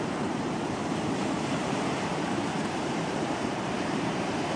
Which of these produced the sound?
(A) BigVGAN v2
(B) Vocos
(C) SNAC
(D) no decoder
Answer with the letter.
A